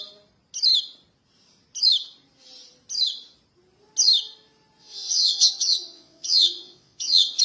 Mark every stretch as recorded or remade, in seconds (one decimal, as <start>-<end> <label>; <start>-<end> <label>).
0.0-4.8 recorded; 4.8-7.4 remade